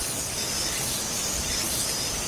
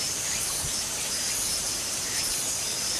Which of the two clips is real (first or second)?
first